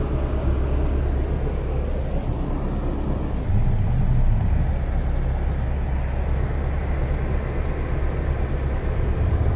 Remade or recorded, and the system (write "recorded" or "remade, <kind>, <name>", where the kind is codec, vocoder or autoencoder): recorded